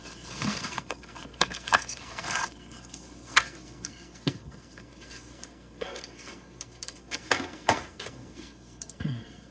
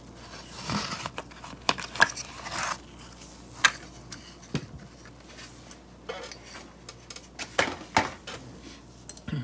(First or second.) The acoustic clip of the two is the second